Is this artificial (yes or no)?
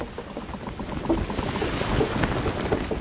no